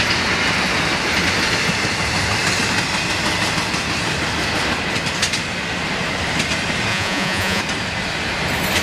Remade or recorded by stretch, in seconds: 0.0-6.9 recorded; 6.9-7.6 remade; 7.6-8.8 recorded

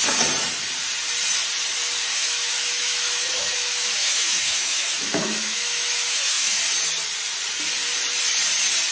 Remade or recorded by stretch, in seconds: 0.0-2.1 recorded; 2.1-6.6 remade; 6.6-8.9 recorded

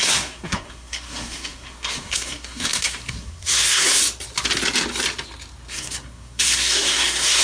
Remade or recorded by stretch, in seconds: 0.0-4.0 remade; 4.0-5.7 recorded; 5.7-7.4 remade

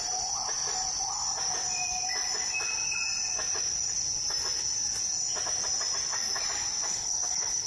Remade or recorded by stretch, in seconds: 0.0-6.9 recorded; 6.9-7.7 remade

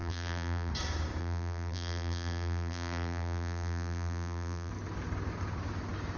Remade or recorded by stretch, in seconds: 0.0-0.7 remade; 0.7-1.2 recorded; 1.2-4.7 remade; 4.7-6.2 recorded

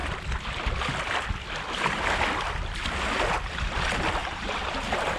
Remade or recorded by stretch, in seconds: 0.0-4.2 recorded; 4.2-5.2 remade